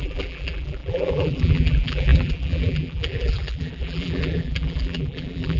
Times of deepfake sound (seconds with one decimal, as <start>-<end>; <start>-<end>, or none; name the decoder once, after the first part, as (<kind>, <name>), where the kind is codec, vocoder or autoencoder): 0.0-5.6 (vocoder, BigVGAN v2)